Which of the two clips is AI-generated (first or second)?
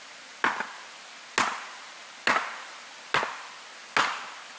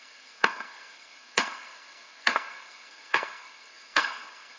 second